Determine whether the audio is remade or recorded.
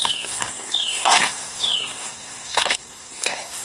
remade